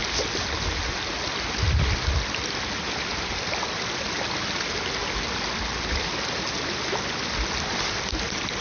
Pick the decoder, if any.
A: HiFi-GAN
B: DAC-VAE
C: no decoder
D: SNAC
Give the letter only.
C